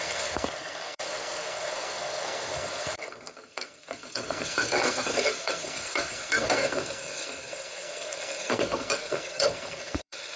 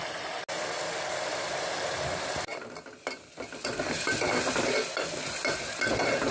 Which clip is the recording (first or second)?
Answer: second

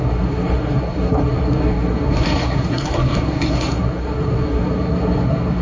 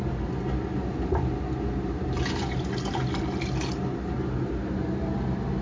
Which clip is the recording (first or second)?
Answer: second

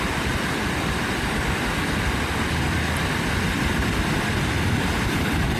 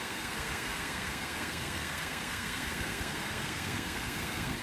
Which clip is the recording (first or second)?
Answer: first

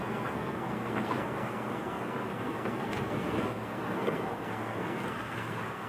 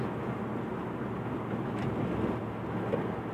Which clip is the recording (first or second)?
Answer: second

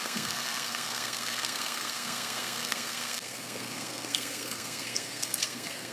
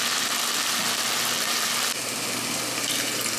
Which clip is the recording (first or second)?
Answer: second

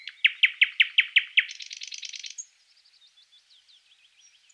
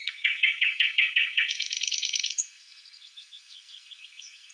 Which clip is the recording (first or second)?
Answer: first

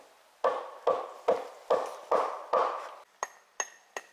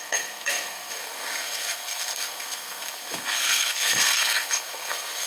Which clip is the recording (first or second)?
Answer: first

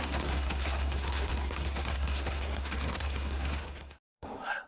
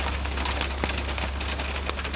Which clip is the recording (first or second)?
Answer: second